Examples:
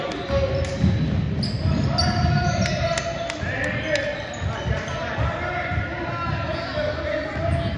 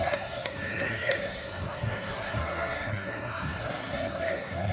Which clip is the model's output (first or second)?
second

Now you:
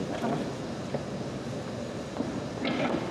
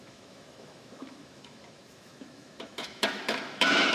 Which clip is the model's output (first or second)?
second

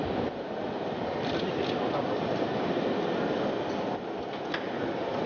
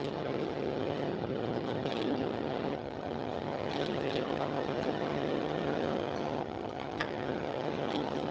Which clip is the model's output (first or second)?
second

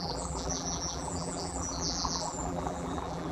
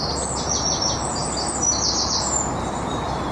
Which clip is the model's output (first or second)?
first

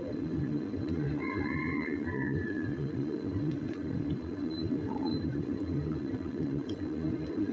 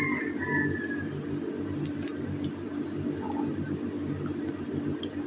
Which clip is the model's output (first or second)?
first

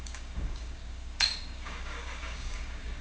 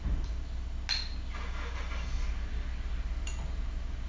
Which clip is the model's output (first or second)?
first